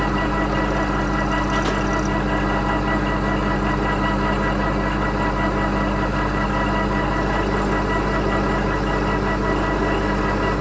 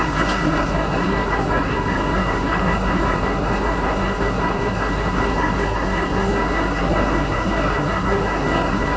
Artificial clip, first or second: second